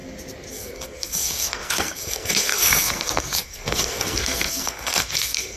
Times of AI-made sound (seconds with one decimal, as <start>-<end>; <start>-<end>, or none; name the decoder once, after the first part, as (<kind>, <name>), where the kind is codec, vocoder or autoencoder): 0.5-5.6 (codec, SNAC)